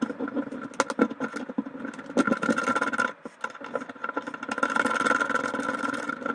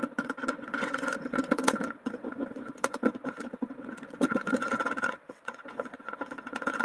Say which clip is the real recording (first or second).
first